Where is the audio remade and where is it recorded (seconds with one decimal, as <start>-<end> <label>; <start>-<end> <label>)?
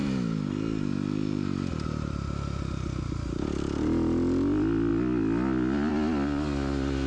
0.0-7.1 recorded